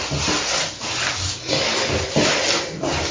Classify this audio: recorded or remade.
recorded